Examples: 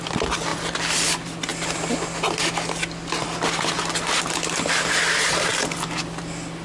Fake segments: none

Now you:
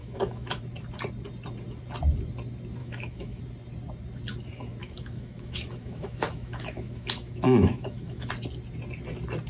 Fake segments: 0.0-0.6; 2.8-3.4; 4.8-8.3

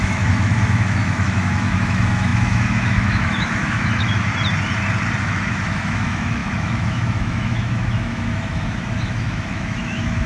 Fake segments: 0.0-4.3; 5.2-10.3

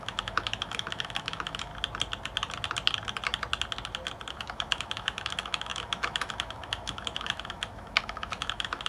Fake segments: 0.0-1.7; 4.3-8.9

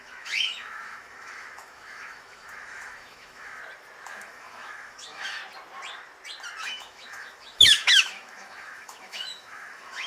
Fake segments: 0.0-3.6; 4.1-5.4; 6.6-10.1

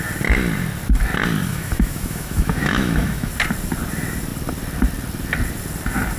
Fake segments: 1.5-3.3

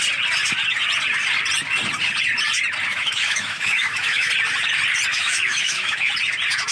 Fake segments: 2.9-4.3; 5.1-6.1

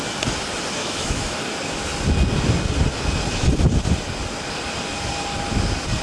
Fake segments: 0.8-1.4